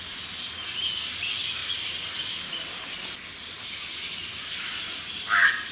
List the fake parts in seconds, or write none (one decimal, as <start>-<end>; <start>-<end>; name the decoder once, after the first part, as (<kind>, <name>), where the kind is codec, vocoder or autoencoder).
none